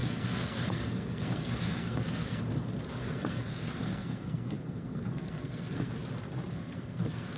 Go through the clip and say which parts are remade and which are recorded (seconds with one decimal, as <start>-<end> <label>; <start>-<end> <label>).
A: 0.0-2.4 remade; 2.4-3.0 recorded; 3.0-5.9 remade; 5.9-6.5 recorded; 6.5-7.4 remade